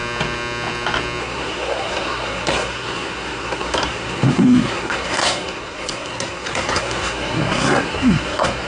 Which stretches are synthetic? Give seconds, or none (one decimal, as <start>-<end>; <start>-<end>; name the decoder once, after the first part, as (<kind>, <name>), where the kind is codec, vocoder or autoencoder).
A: 1.2-8.7 (codec, SNAC)